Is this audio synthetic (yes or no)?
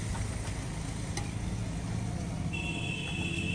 no